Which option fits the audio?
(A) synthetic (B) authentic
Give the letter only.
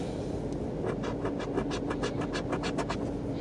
B